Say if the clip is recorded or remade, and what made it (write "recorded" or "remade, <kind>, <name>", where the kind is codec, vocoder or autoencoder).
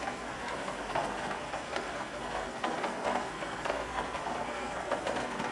remade, codec, SNAC